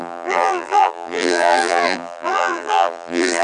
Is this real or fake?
fake